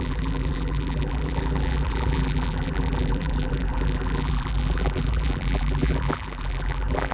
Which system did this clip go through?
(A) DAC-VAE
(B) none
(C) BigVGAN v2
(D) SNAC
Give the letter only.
C